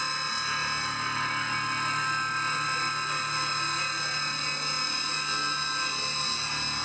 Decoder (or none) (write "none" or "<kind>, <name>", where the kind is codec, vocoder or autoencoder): none